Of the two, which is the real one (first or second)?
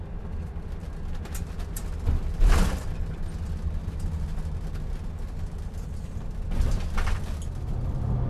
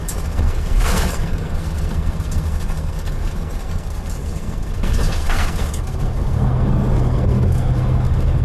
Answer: first